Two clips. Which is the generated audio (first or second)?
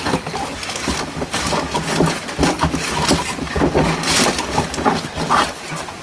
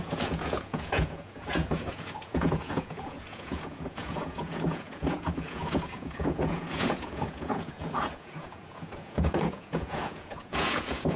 second